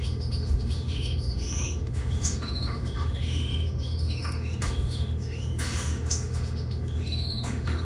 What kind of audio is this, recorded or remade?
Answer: remade